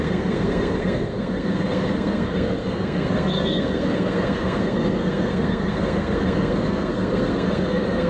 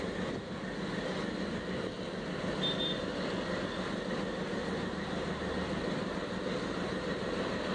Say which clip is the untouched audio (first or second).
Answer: second